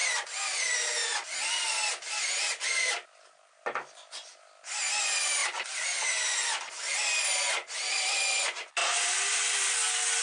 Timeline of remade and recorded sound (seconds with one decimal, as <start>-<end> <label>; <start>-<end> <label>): 0.0-10.2 recorded